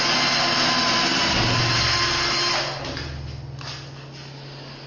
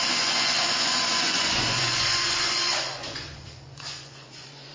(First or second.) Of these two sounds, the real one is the first